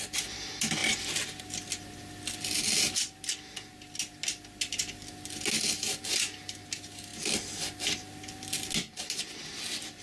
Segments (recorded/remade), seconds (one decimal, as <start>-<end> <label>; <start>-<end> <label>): 0.0-10.0 recorded